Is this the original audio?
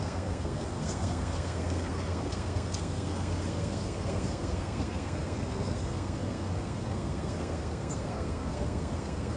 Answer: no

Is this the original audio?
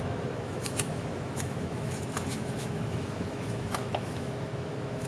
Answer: no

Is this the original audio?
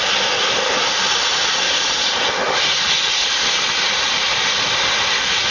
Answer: yes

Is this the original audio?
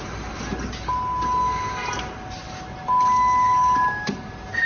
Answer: yes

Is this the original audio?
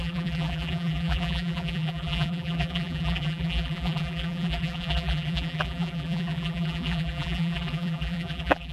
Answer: no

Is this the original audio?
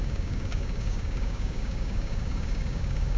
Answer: no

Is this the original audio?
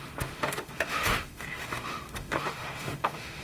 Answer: no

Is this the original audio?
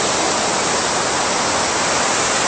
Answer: yes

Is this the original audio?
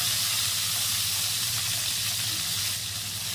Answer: yes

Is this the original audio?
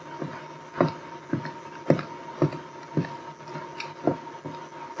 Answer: yes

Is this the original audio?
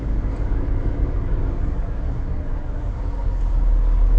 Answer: no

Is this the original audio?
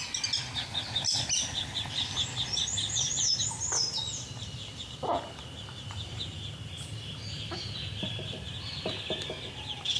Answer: yes